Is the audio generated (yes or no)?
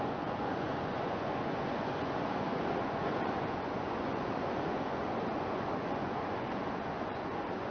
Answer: yes